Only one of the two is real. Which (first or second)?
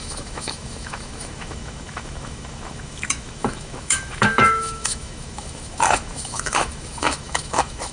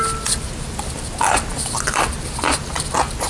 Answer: second